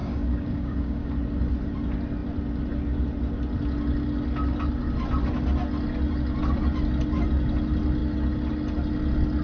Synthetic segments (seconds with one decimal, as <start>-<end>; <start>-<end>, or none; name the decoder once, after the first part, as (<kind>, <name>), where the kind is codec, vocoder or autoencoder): 0.0-1.1 (codec, DAC)